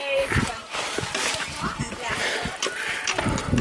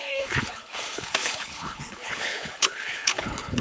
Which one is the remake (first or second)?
second